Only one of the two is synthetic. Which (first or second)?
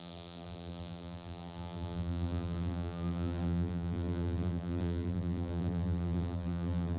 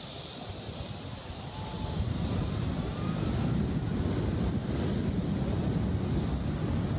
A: first